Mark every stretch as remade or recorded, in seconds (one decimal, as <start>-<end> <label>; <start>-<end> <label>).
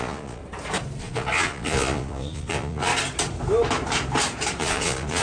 0.0-0.4 remade; 0.4-1.0 recorded; 1.0-2.9 remade; 2.9-4.6 recorded; 4.6-5.2 remade